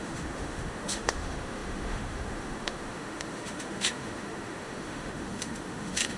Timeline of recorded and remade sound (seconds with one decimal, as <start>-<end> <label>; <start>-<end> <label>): 0.0-6.2 remade